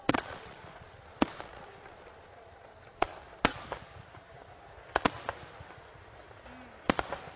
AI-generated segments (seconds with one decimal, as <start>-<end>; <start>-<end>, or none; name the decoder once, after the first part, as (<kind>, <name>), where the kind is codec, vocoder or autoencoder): 0.0-3.1 (vocoder, Vocos)